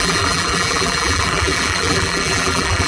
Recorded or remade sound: remade